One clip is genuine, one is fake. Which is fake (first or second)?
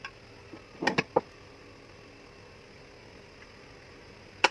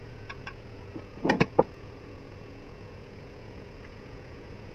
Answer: second